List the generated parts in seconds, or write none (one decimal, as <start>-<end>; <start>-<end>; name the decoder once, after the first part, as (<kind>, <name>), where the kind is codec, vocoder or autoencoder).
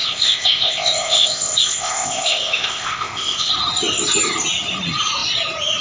0.0-3.5 (codec, ZipCodec)